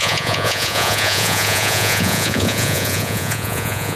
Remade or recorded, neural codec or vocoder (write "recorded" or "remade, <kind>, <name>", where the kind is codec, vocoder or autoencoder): remade, vocoder, Vocos